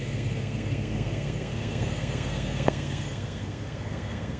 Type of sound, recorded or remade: remade